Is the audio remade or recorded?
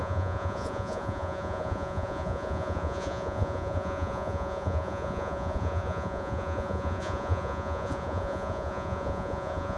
remade